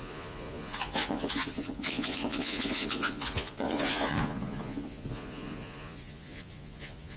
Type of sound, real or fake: fake